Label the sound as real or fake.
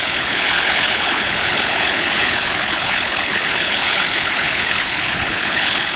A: fake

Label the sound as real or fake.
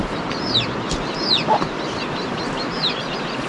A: fake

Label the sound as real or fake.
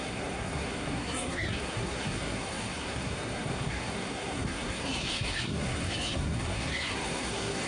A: fake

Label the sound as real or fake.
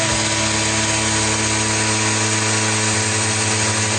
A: real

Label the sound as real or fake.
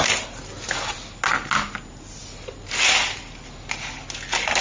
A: real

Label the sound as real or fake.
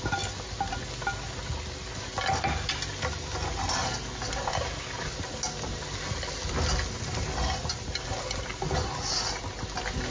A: real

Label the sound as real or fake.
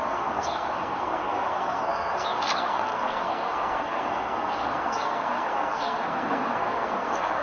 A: fake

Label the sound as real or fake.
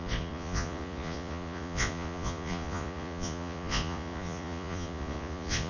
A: fake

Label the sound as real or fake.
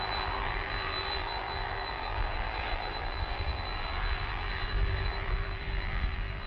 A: fake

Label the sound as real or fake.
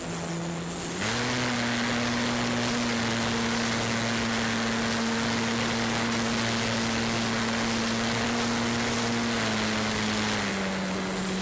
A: real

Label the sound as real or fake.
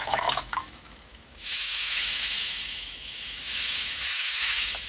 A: fake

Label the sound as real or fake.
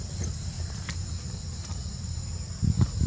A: real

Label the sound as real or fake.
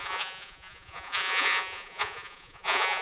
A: fake